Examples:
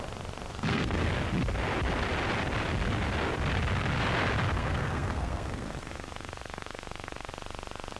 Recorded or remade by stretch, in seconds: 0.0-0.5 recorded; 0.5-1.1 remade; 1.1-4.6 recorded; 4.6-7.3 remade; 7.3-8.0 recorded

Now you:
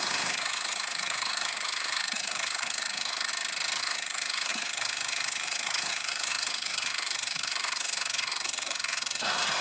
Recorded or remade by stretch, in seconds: 0.0-3.3 remade; 3.3-3.8 recorded; 3.8-9.6 remade

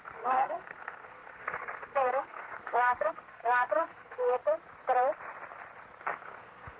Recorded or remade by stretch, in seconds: 0.0-4.4 remade; 4.4-6.0 recorded; 6.0-6.8 remade

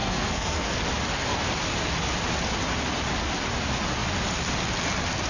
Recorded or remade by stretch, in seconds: 0.0-0.8 remade; 0.8-5.3 recorded

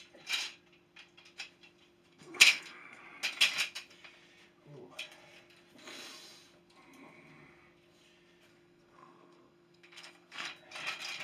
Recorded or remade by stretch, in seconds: 0.0-2.1 recorded; 2.1-3.0 remade; 3.0-8.5 recorded; 8.5-10.5 remade; 10.5-11.2 recorded

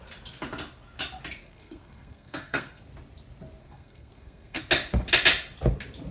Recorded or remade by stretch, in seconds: 0.0-1.4 recorded; 1.4-2.8 remade; 2.8-3.6 recorded; 3.6-4.6 remade; 4.6-6.1 recorded

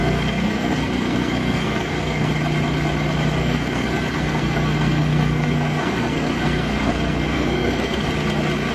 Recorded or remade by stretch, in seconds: 0.0-2.3 remade; 2.3-3.4 recorded; 3.4-8.1 remade; 8.1-8.7 recorded